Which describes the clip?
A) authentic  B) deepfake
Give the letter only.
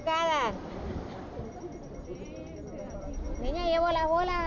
A